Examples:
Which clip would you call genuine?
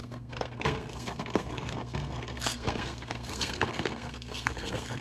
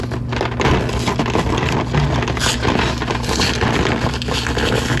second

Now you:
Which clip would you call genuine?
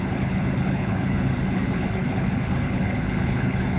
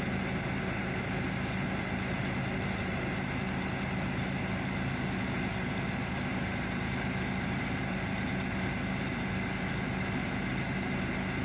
second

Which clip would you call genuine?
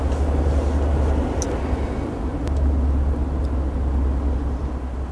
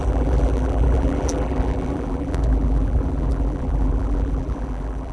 first